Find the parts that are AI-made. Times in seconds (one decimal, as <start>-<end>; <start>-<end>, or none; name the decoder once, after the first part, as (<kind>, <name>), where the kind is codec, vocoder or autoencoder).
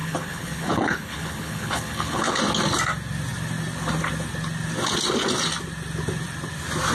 0.0-2.4 (codec, HILCodec)